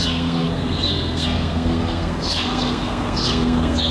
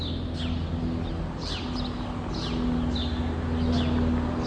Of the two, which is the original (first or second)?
second